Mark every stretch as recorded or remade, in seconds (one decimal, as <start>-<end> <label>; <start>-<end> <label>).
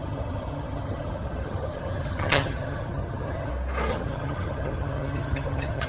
0.0-3.5 remade; 3.5-3.9 recorded; 3.9-5.9 remade